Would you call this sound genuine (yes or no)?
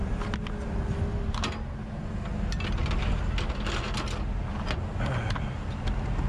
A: yes